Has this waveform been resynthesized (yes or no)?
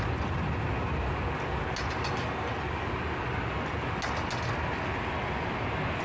no